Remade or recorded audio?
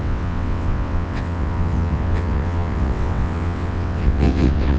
remade